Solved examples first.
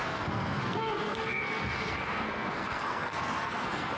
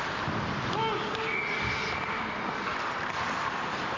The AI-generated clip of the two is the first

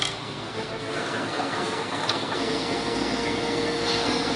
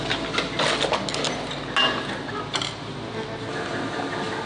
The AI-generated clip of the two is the first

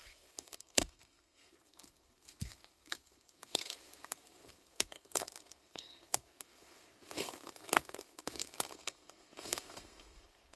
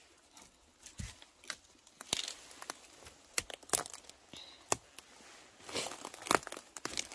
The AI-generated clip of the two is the first